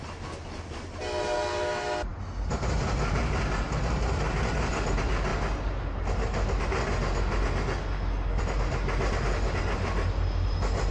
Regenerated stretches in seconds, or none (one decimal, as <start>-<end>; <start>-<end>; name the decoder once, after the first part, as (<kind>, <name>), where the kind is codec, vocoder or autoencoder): none